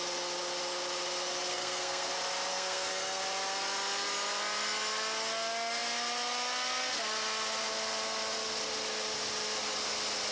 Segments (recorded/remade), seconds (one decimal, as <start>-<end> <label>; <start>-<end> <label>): 0.0-1.5 recorded; 1.5-2.1 remade; 2.1-2.5 recorded; 2.5-3.2 remade; 3.2-10.3 recorded